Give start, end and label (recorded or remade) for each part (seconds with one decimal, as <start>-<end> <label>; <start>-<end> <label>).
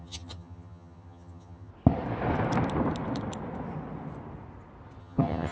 0.0-1.7 remade; 1.7-5.0 recorded; 5.0-5.5 remade